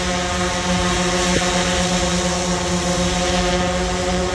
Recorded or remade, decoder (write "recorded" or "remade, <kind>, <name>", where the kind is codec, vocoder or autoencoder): recorded